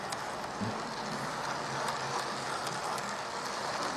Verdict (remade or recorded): recorded